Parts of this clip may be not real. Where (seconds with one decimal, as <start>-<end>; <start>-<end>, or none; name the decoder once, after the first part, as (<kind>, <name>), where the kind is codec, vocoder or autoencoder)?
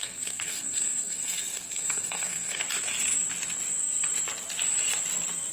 0.0-2.6 (codec, SNAC)